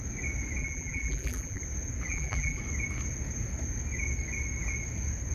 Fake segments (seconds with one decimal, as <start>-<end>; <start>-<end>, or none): 0.6-1.6; 2.1-2.6